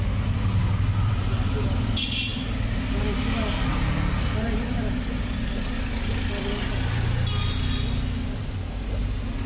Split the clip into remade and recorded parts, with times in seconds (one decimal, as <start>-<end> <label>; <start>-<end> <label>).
0.0-9.5 recorded